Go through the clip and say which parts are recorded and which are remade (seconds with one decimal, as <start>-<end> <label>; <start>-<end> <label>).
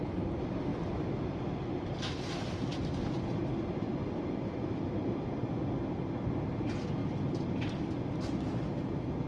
0.0-0.7 recorded; 0.7-4.9 remade; 4.9-7.0 recorded; 7.0-7.8 remade; 7.8-9.3 recorded